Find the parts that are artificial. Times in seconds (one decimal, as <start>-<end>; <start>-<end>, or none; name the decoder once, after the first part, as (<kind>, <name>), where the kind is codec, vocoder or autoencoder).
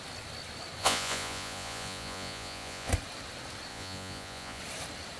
0.8-2.9 (vocoder, Vocos); 3.7-4.6